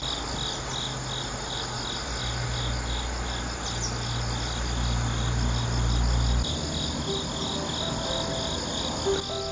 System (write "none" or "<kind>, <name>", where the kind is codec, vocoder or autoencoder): none